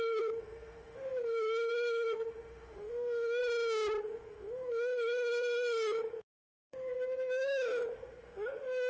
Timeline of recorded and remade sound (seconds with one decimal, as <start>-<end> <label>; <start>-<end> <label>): 0.0-3.4 remade; 3.4-4.0 recorded; 4.0-8.9 remade